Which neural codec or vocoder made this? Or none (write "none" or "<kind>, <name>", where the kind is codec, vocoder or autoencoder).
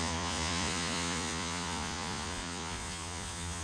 vocoder, Vocos